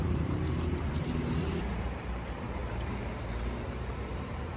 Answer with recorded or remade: remade